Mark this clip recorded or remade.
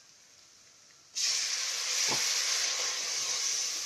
recorded